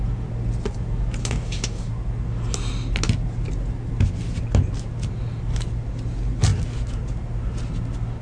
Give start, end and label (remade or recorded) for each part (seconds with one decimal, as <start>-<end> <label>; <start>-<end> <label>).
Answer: 0.0-1.2 recorded; 1.2-1.9 remade; 1.9-8.2 recorded